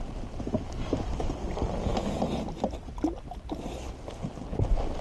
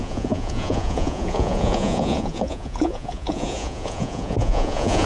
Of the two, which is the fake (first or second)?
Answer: second